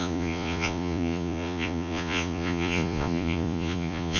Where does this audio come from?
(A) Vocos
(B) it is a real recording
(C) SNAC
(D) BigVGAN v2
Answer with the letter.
A